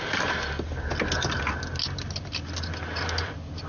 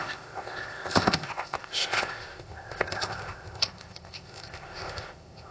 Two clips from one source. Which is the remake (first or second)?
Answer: second